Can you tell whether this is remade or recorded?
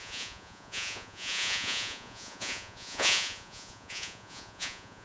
remade